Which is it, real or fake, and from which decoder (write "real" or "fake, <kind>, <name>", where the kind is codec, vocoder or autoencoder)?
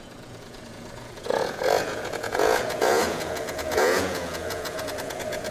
fake, vocoder, Vocos